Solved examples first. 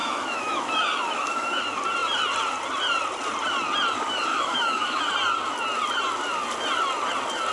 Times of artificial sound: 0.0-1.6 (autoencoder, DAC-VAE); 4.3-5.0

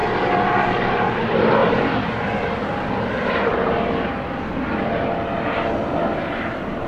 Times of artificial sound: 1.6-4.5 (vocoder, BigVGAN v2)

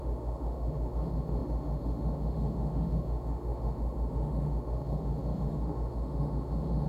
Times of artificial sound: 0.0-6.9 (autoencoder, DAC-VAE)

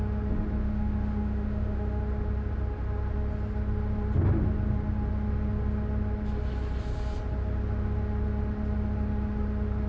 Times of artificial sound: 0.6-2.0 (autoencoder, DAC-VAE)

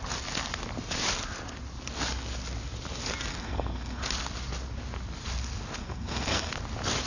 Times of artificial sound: 3.3-4.0 (codec, SNAC); 5.8-6.5

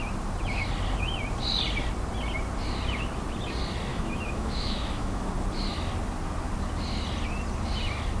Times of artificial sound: 3.9-5.3 (autoencoder, DAC-VAE)

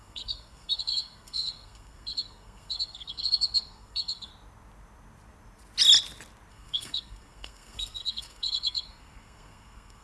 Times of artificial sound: 0.0-4.3 (codec, SNAC); 6.5-10.0